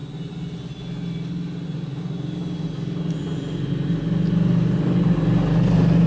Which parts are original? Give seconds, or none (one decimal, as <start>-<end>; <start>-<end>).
0.0-6.1